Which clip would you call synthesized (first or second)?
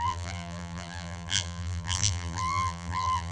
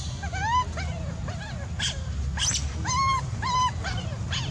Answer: first